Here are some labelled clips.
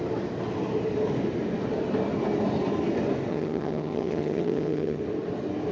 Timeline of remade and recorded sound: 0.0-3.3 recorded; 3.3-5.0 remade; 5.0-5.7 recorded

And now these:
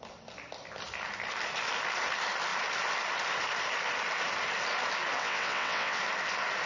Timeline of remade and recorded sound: 0.0-5.2 recorded; 5.2-6.0 remade; 6.0-6.7 recorded

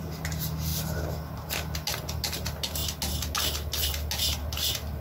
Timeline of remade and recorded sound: 0.0-5.0 recorded

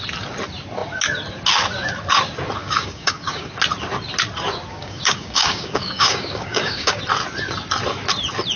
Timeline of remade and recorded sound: 0.0-2.6 recorded; 2.6-3.5 remade; 3.5-4.7 recorded; 4.7-7.0 remade; 7.0-8.6 recorded

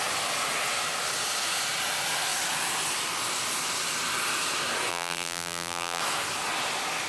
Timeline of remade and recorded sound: 0.0-4.9 recorded; 4.9-6.0 remade; 6.0-7.1 recorded

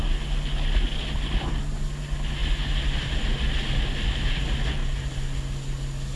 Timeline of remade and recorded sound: 0.0-6.2 recorded